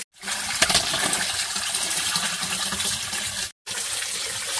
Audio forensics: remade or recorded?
recorded